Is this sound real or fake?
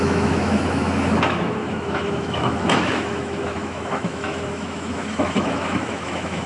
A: fake